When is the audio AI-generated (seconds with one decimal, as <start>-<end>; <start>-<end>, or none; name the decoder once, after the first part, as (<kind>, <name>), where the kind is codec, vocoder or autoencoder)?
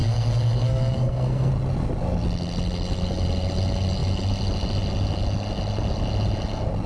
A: 0.0-1.5 (codec, SNAC)